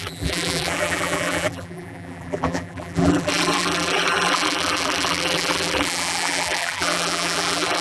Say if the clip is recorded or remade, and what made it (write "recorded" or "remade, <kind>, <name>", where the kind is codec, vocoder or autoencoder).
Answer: remade, vocoder, BigVGAN v2